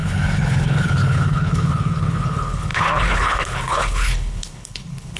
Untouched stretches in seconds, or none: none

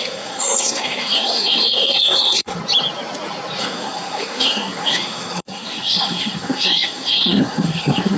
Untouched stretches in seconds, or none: 2.6-3.6

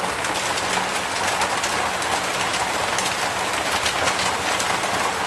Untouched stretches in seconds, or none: 0.0-5.3

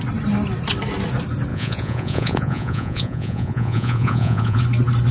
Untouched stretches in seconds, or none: 0.0-1.5; 4.6-5.1

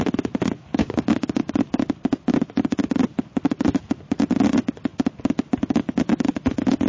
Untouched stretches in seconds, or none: 0.0-0.7; 1.5-6.9

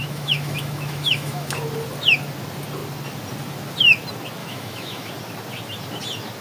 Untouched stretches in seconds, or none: 1.5-4.4; 5.1-6.4